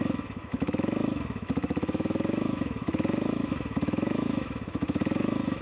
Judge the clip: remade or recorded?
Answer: remade